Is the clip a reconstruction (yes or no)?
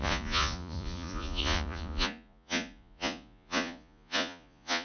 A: yes